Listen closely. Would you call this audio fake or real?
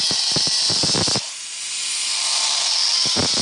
real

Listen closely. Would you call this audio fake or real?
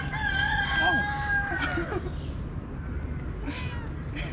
real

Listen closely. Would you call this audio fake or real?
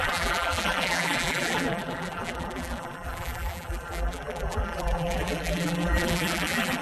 fake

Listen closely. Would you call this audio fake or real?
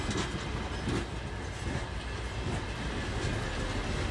real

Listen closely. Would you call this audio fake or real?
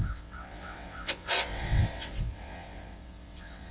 fake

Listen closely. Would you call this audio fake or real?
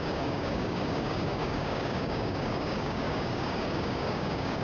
fake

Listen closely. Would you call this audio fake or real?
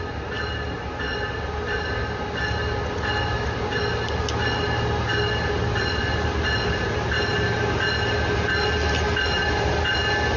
real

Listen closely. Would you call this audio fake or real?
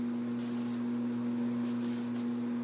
real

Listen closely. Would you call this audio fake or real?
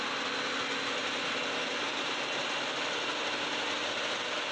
real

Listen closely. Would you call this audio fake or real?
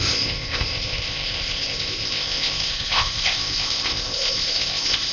fake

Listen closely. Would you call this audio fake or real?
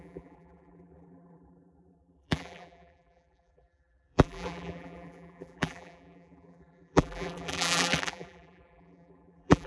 fake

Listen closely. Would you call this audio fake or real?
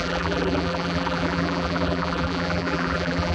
fake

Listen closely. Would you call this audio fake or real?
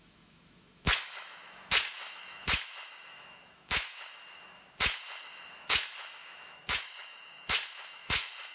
fake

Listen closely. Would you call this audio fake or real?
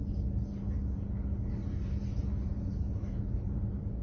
real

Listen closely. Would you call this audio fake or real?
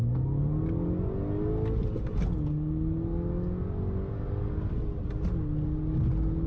real